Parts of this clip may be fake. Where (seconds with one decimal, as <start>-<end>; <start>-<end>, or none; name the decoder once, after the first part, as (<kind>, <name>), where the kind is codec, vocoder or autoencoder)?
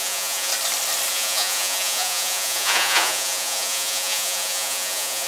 0.0-0.5 (vocoder, Vocos); 1.1-5.3